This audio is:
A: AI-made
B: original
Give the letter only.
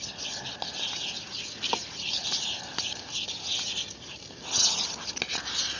B